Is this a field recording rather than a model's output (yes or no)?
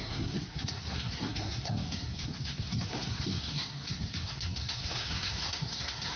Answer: no